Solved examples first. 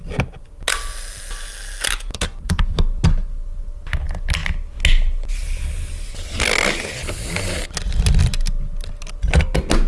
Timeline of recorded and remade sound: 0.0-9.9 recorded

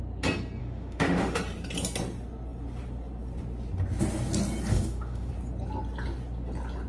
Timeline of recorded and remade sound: 0.0-0.6 recorded; 0.6-1.4 remade; 1.4-4.7 recorded; 4.7-5.3 remade; 5.3-6.9 recorded

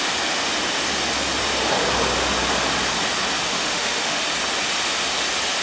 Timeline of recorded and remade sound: 0.0-3.5 recorded; 3.5-4.2 remade; 4.2-5.6 recorded

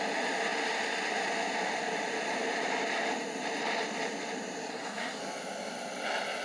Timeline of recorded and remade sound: 0.0-4.7 recorded; 4.7-5.2 remade; 5.2-6.4 recorded

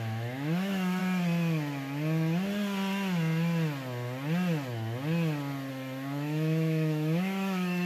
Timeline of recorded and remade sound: 0.0-1.0 remade; 1.0-5.7 recorded; 5.7-7.9 remade

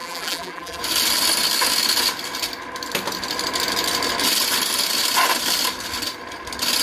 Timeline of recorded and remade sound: 0.0-0.8 remade; 0.8-6.8 recorded

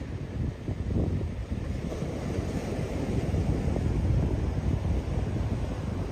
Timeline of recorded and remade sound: 0.0-1.4 recorded; 1.4-3.3 remade; 3.3-6.1 recorded